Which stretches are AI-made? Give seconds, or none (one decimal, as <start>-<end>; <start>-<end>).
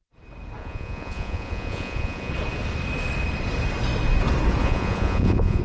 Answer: 0.6-2.3; 4.6-5.6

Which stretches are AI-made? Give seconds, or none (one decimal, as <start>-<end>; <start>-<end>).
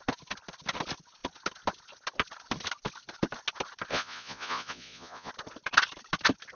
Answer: 3.9-5.3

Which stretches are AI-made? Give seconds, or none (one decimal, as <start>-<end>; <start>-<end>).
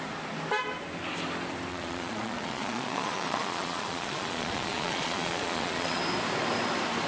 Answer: 1.7-6.0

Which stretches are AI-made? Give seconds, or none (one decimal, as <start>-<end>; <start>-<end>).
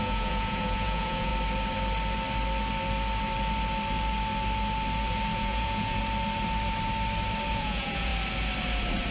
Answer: 0.0-1.3; 5.4-6.0; 7.5-8.1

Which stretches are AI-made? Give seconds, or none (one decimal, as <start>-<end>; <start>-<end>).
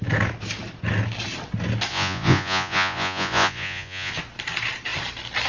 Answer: 1.9-4.1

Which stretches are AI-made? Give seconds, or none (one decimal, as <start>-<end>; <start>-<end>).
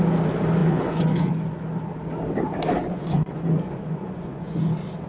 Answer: 0.6-1.3; 2.9-4.6